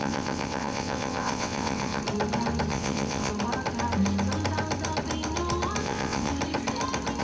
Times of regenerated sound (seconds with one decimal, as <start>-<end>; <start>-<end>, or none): 0.0-2.0; 2.7-3.3; 5.8-6.3

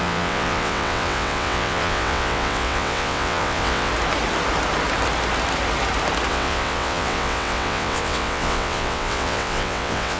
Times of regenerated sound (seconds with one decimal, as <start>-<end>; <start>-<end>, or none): 0.0-3.9; 6.3-10.2

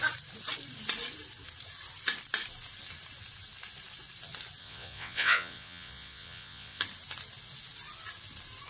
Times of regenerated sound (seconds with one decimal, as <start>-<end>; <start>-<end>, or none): 4.6-6.8

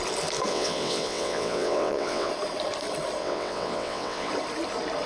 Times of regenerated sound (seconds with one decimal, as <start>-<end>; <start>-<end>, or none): 0.5-2.3; 3.2-4.3

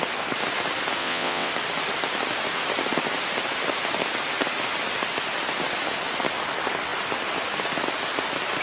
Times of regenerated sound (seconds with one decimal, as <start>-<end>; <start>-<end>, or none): 1.0-1.5

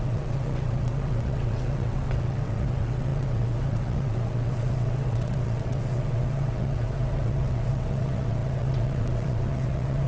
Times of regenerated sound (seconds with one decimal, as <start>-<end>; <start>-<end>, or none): 0.0-10.1

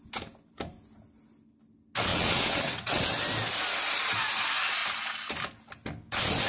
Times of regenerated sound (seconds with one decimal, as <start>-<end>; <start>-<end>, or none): 2.1-3.0

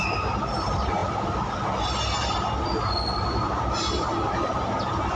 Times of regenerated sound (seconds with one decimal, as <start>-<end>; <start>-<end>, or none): none